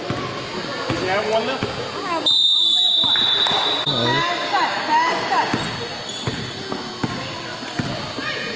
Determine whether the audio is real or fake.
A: real